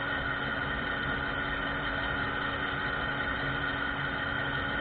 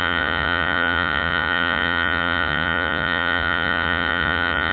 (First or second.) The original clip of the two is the first